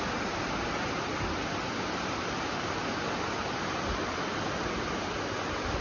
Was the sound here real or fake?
real